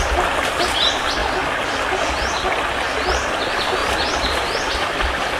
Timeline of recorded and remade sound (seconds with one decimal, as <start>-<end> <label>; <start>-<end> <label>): 0.0-3.8 recorded; 3.8-4.7 remade; 4.7-5.4 recorded